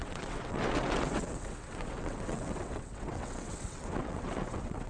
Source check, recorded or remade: remade